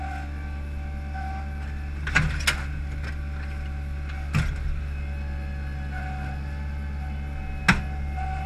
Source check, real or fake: real